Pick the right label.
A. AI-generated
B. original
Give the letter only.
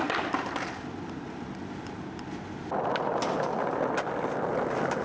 B